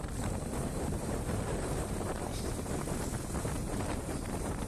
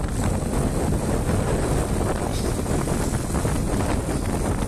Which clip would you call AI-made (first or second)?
first